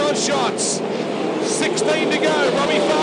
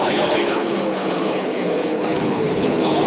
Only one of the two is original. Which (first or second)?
first